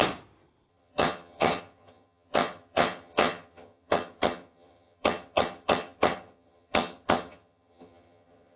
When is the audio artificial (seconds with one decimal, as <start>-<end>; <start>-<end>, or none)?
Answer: 0.7-8.6